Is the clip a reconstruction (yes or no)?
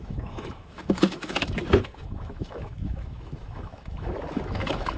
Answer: yes